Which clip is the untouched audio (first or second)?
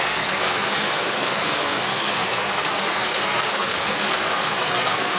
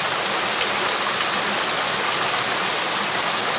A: second